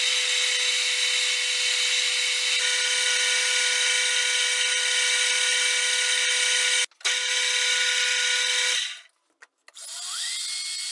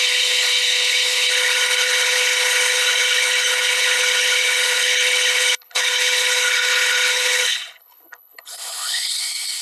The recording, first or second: first